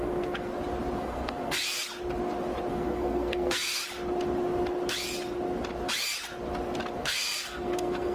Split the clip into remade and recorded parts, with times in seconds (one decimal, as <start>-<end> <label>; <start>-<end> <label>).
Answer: 0.0-0.5 remade; 0.5-1.0 recorded; 1.0-1.6 remade; 1.6-2.7 recorded; 2.7-3.8 remade; 3.8-7.0 recorded; 7.0-8.1 remade

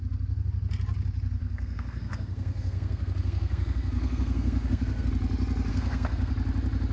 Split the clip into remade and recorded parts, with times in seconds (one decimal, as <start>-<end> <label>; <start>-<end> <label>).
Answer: 0.0-1.4 recorded; 1.4-5.1 remade; 5.1-5.7 recorded; 5.7-6.3 remade; 6.3-6.9 recorded

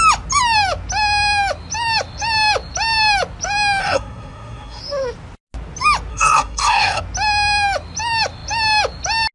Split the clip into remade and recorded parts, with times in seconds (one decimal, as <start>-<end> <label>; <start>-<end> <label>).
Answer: 0.0-3.8 recorded; 3.8-4.8 remade; 4.8-6.1 recorded; 6.1-7.0 remade; 7.0-9.3 recorded

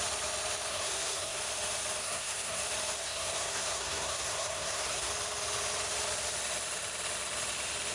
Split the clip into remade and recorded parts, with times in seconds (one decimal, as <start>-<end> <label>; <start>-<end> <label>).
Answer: 0.0-0.7 recorded; 0.7-1.4 remade; 1.4-2.0 recorded; 2.0-2.6 remade; 2.6-3.0 recorded; 3.0-5.1 remade; 5.1-7.9 recorded